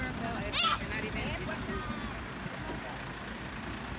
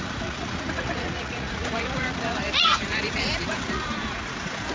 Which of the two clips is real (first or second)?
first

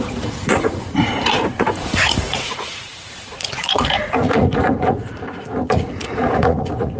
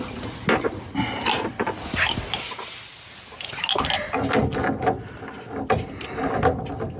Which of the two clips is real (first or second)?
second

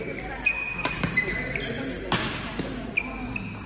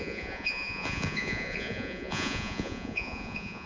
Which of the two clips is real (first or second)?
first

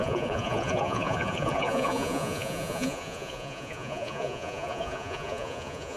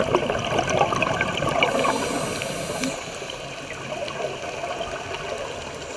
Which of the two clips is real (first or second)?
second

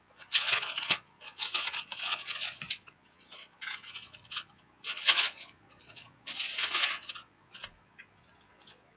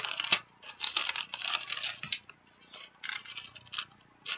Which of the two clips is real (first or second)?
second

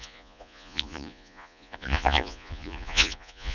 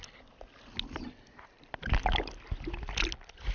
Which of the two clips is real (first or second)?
second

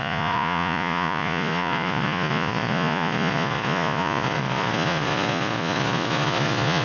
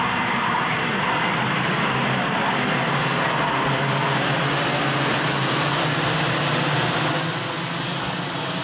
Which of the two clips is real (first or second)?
second